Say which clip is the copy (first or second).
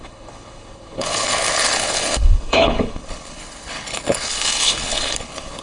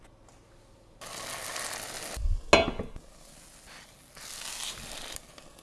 first